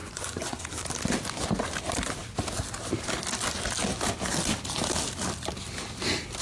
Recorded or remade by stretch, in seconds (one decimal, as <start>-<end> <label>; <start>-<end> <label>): 0.0-0.6 remade; 0.6-6.4 recorded